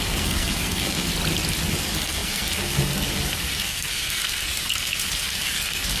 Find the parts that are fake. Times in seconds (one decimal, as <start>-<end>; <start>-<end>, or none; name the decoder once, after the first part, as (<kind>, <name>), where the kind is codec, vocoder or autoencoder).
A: 0.0-1.1 (codec, SNAC); 1.8-6.0